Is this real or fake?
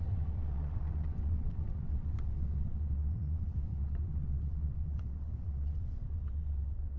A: fake